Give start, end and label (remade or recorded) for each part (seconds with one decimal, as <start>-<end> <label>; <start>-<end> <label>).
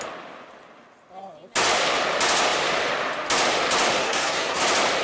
0.0-4.0 recorded; 4.0-4.6 remade; 4.6-5.0 recorded